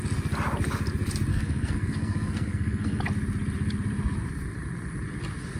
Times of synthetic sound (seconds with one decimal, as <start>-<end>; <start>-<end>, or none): 1.3-3.0